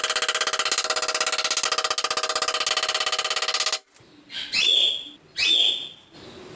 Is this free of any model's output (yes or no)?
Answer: yes